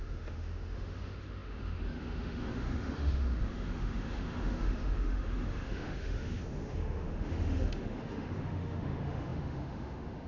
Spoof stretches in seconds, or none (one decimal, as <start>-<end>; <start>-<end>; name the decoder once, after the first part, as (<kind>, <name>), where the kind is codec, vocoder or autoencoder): 0.0-10.3 (autoencoder, DAC-VAE)